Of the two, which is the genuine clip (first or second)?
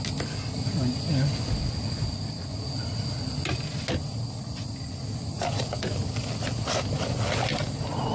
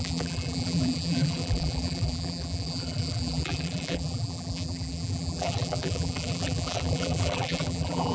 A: first